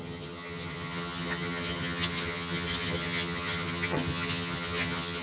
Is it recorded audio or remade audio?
remade